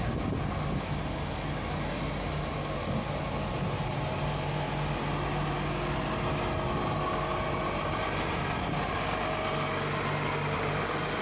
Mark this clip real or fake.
real